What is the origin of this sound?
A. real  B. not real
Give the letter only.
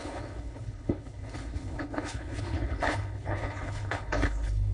B